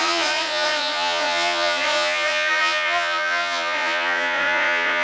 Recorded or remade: remade